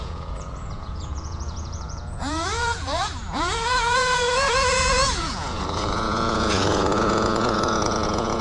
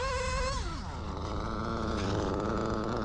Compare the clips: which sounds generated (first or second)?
first